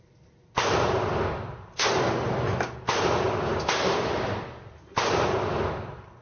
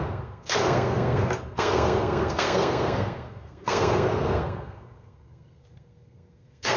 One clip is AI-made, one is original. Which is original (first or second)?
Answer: first